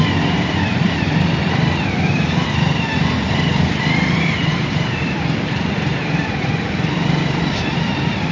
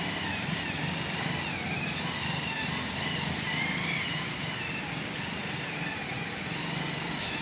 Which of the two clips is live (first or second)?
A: second